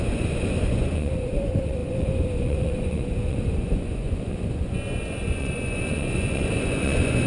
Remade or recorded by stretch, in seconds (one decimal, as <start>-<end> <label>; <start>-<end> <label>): 0.0-7.3 remade